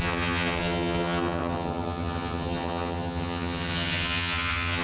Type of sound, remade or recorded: remade